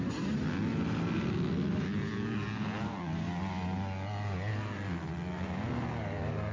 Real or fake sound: real